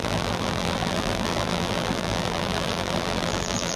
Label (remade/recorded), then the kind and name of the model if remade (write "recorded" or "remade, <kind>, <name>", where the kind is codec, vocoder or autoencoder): remade, vocoder, BigVGAN v2